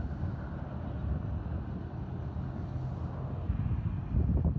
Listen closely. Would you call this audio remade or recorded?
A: recorded